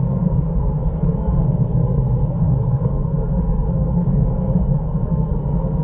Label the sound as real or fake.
fake